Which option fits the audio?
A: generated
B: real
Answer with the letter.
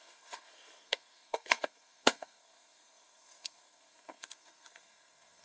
A